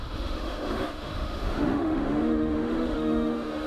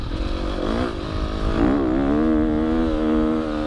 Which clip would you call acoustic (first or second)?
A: second